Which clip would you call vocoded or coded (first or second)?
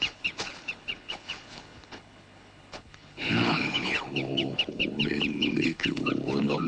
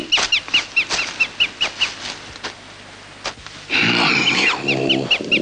first